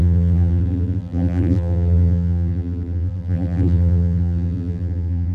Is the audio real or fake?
fake